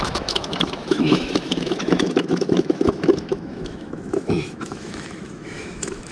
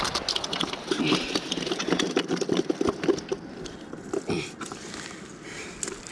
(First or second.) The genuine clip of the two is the second